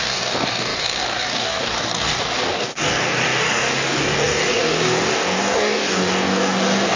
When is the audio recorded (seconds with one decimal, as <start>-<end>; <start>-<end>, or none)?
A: none